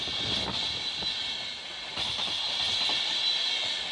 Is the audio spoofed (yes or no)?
no